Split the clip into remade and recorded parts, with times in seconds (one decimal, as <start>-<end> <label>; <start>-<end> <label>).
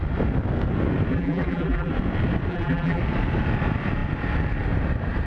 0.0-1.1 recorded; 1.1-1.9 remade; 1.9-2.5 recorded; 2.5-3.0 remade; 3.0-5.3 recorded